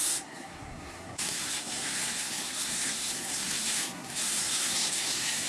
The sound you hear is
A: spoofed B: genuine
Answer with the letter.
A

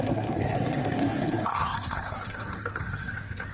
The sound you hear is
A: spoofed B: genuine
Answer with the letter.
A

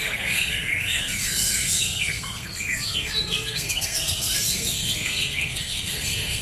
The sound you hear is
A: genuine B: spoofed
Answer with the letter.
B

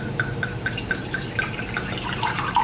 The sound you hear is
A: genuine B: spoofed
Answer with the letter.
A